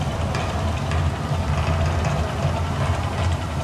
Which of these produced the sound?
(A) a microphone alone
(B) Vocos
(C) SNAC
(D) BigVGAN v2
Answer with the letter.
A